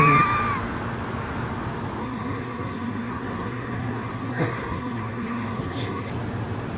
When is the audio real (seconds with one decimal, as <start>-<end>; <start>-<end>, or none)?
0.0-2.0; 6.1-6.8